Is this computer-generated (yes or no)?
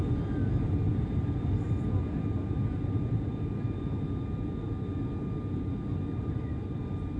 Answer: no